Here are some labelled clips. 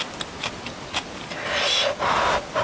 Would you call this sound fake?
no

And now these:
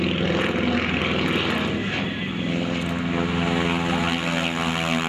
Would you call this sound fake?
no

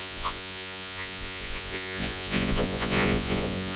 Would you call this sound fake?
yes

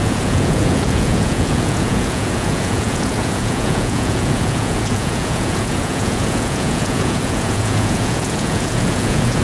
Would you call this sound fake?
yes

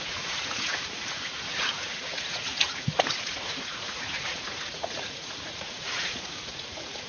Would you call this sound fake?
yes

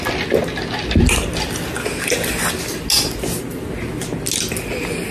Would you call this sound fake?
no